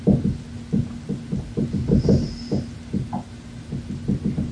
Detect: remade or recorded recorded